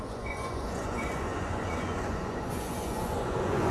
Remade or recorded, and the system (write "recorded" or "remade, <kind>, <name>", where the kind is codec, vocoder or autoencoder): remade, vocoder, Vocos